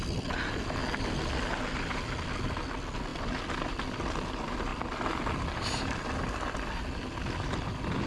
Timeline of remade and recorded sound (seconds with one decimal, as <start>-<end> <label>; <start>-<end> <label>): 0.0-8.1 recorded